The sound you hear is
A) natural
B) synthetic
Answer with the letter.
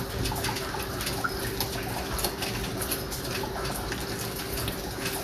A